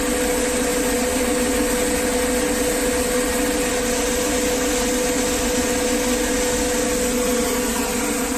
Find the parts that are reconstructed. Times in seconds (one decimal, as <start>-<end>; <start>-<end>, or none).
0.7-1.2